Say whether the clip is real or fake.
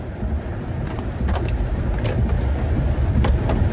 fake